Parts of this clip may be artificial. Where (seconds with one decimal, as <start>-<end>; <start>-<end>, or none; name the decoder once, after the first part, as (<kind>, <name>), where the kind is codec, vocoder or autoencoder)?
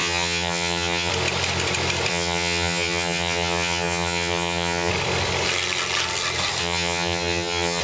0.0-1.1 (vocoder, HiFi-GAN); 2.1-4.9; 6.6-7.8